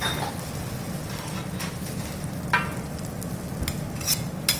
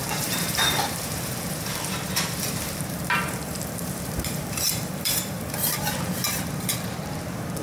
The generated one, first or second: second